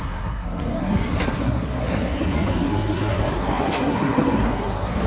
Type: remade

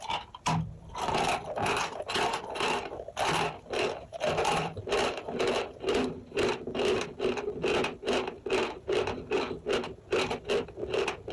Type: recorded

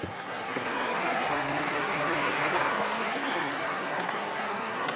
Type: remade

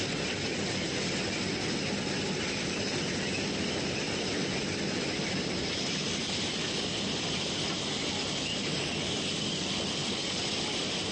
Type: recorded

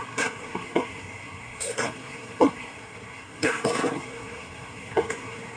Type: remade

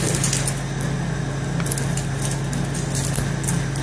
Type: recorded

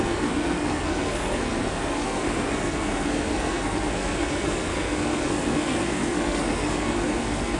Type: remade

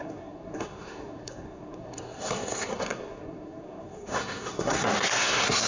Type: remade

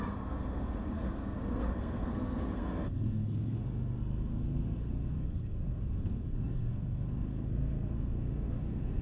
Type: remade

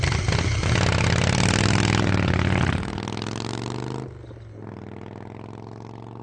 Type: recorded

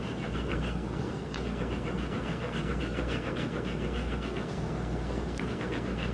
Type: remade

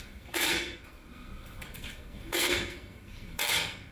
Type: remade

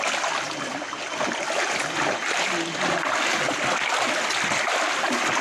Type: recorded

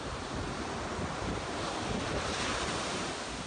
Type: recorded